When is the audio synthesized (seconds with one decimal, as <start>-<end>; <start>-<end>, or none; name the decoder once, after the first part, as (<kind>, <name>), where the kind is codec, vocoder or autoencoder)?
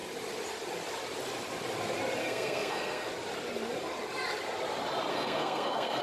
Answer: 2.2-3.1 (codec, SNAC); 5.1-6.0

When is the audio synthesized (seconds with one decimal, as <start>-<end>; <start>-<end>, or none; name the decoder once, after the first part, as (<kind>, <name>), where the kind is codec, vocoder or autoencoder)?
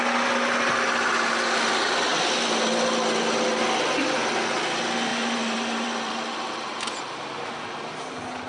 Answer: 2.1-4.2 (vocoder, BigVGAN v2); 5.1-7.0